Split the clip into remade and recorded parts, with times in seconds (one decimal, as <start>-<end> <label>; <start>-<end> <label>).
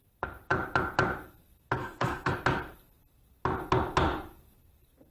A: 0.0-1.8 recorded; 1.8-2.3 remade; 2.3-5.1 recorded